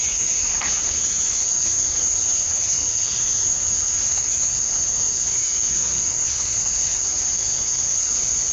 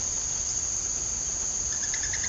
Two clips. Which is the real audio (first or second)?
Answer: second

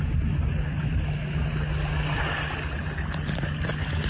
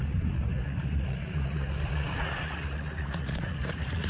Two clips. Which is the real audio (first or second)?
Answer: first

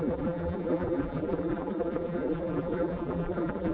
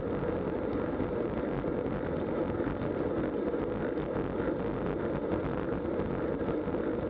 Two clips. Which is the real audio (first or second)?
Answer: second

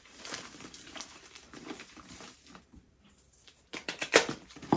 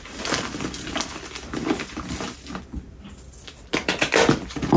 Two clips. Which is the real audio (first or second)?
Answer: second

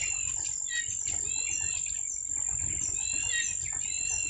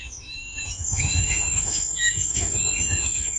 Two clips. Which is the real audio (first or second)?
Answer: first